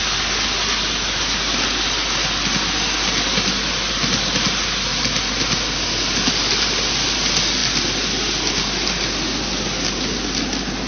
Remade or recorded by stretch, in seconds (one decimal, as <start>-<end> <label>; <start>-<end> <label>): 0.0-10.9 recorded